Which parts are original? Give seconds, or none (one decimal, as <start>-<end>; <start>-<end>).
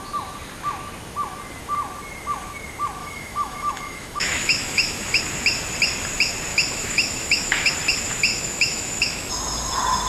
0.0-3.0; 5.2-6.5; 7.7-8.3; 9.3-10.1